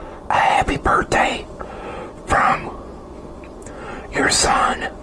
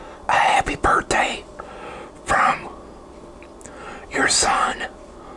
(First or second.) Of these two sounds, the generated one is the first